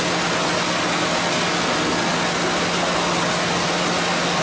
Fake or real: real